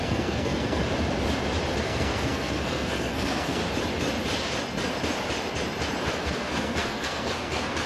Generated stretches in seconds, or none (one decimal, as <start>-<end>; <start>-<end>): 0.0-0.8; 1.8-3.6; 6.2-7.9